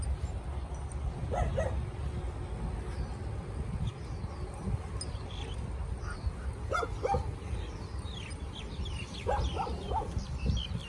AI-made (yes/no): no